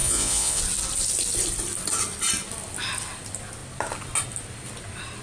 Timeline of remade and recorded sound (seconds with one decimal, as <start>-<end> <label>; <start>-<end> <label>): 0.0-0.6 remade; 0.6-5.2 recorded